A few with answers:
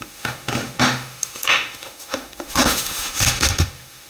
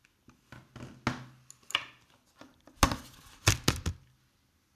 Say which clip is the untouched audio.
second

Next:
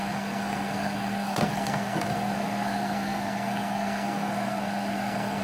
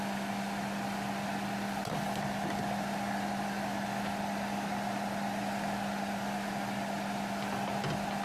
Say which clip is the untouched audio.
second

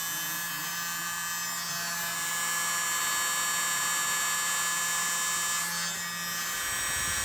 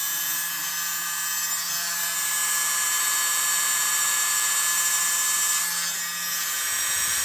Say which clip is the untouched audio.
first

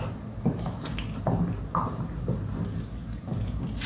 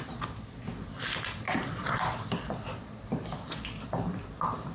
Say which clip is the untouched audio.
first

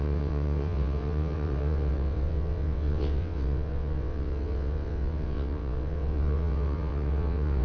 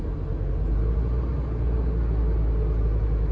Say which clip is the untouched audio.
second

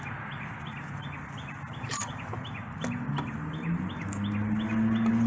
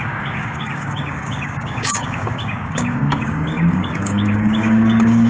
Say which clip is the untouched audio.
first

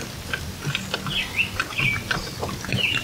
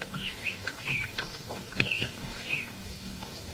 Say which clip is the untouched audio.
first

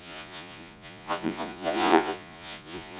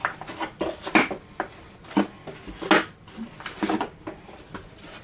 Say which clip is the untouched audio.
second